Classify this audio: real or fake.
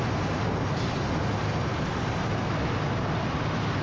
real